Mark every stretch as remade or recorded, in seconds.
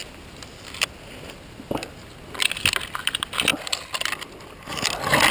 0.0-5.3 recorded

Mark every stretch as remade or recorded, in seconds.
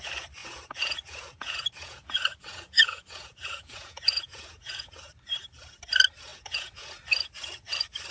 0.0-0.4 recorded; 0.4-5.0 remade; 5.0-6.3 recorded; 6.3-6.9 remade; 6.9-8.1 recorded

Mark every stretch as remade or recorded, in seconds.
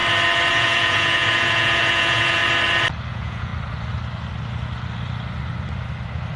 0.0-0.5 recorded; 0.5-2.4 remade; 2.4-3.1 recorded; 3.1-3.5 remade; 3.5-6.4 recorded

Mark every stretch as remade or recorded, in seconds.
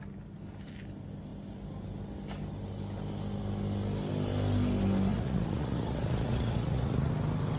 0.0-5.1 recorded; 5.1-7.1 remade; 7.1-7.6 recorded